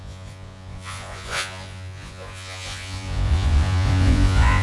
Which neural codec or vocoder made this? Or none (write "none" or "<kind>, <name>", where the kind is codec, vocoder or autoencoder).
vocoder, Vocos